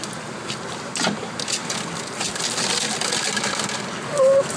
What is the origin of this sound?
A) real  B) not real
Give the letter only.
A